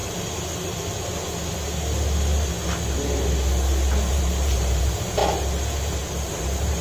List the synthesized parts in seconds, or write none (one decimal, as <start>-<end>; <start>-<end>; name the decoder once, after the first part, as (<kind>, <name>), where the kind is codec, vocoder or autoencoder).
4.1-5.2 (vocoder, BigVGAN v2); 6.3-6.8